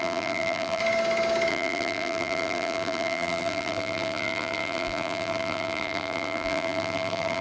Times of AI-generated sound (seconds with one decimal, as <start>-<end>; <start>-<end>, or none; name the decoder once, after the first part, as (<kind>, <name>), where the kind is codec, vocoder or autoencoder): 0.0-0.8 (vocoder, BigVGAN v2); 1.5-7.4